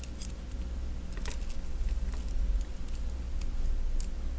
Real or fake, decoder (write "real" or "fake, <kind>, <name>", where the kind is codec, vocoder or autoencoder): real